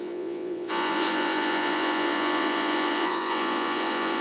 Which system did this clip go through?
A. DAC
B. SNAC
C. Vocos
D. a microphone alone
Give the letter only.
C